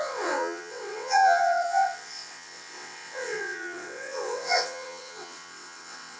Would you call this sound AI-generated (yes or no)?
yes